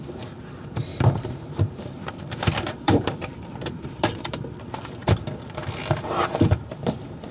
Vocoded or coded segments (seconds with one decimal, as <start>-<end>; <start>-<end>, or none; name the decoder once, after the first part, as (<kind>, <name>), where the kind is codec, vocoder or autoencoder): 0.9-5.3 (vocoder, BigVGAN v2)